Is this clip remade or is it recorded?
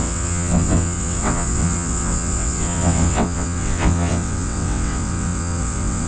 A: remade